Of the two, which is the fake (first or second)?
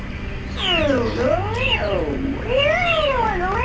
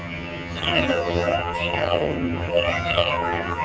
second